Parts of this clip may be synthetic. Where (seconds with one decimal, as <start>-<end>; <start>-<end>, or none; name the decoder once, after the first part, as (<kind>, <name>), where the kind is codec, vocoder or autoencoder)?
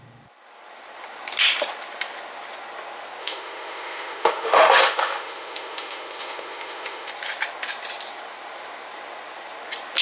3.2-7.1 (autoencoder, DAC-VAE)